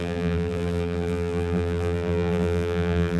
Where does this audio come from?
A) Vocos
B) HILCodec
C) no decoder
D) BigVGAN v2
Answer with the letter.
D